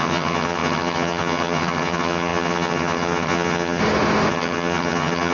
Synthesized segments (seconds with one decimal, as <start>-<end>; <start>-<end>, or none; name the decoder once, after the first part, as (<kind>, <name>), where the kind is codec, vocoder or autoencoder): 0.0-3.8 (vocoder, HiFi-GAN); 4.3-5.3